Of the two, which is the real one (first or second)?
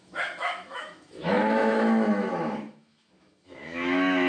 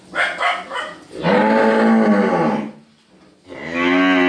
second